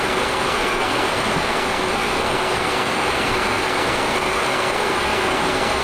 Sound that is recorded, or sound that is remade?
remade